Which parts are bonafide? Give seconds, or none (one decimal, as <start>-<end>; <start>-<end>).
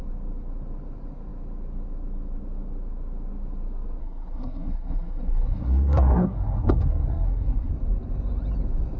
0.0-4.0; 7.7-9.0